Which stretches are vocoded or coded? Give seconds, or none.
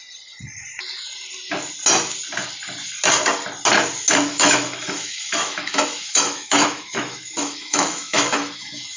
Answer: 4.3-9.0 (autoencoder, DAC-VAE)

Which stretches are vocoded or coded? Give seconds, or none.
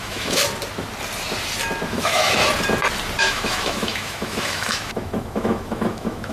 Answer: 0.0-0.4 (autoencoder, DAC-VAE); 1.9-2.4; 3.2-6.3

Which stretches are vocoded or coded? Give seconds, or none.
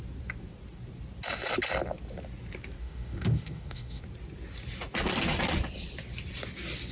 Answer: 2.8-4.0 (autoencoder, DAC-VAE)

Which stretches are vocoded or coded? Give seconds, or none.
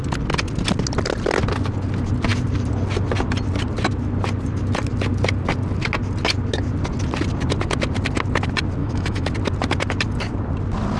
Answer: 8.8-9.3 (autoencoder, DAC-VAE)